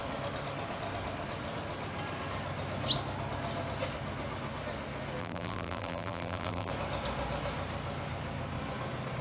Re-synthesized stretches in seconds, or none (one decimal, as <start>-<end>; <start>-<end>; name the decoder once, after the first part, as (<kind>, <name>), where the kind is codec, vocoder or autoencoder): 5.2-6.7 (vocoder, BigVGAN v2)